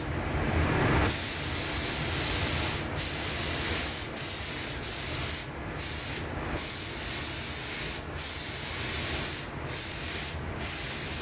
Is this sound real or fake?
real